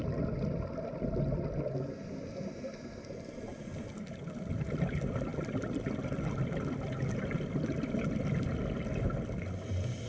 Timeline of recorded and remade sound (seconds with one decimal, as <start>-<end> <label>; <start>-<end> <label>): 0.0-10.1 recorded